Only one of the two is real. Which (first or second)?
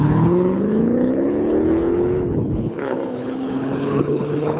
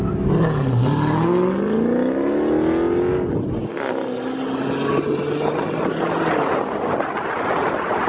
second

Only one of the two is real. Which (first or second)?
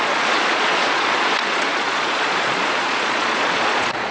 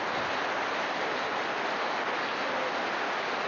second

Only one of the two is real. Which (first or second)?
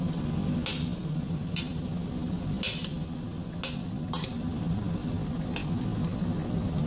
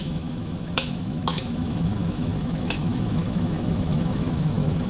first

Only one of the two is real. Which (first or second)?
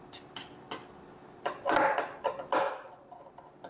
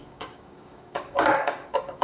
first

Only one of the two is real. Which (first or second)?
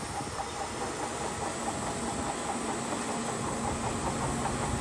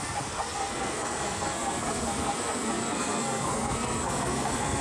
first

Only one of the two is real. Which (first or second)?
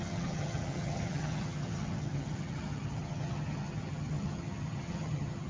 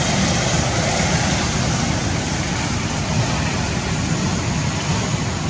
second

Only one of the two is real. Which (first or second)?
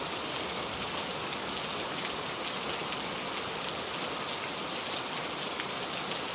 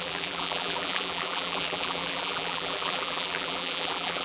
first